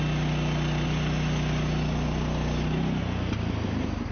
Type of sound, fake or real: real